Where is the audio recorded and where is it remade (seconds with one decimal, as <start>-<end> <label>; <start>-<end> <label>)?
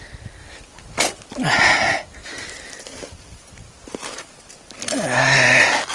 0.0-2.2 recorded; 2.2-4.6 remade; 4.6-5.9 recorded